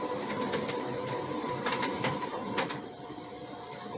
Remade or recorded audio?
remade